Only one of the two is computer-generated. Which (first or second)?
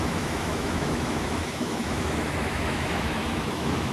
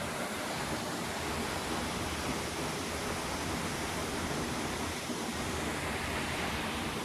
first